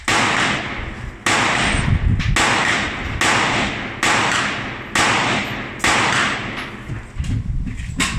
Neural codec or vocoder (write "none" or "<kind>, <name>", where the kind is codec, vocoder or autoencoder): none